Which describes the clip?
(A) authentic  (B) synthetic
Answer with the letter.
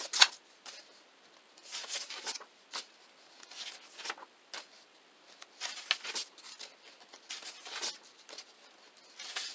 A